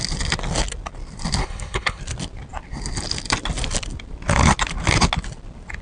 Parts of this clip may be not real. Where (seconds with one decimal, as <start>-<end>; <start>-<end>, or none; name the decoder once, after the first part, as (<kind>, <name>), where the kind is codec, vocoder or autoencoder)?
1.4-2.0 (codec, HILCodec)